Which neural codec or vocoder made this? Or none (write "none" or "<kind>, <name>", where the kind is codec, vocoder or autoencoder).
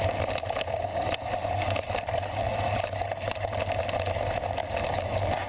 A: none